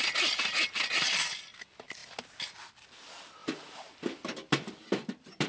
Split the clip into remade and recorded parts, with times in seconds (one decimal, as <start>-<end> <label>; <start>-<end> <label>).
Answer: 0.0-3.4 recorded; 3.4-5.5 remade